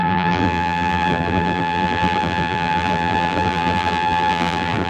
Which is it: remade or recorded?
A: remade